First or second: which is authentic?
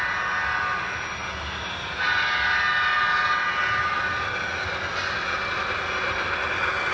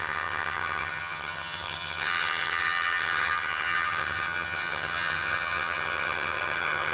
first